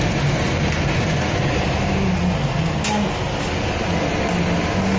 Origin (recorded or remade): recorded